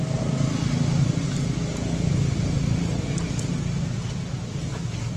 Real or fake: real